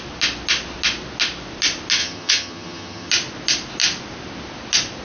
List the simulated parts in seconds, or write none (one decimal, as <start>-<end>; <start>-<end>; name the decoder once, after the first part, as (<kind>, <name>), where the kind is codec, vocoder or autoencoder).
2.0-3.1 (vocoder, HiFi-GAN)

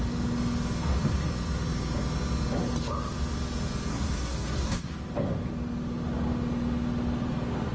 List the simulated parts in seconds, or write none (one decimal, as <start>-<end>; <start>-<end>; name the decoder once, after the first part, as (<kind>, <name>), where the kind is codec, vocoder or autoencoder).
3.9-4.9 (codec, SNAC)